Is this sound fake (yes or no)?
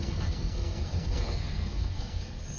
yes